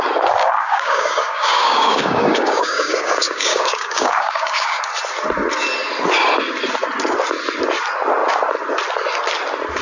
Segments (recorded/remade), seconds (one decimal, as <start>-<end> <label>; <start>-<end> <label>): 0.0-0.4 recorded; 0.4-4.8 remade; 4.8-9.8 recorded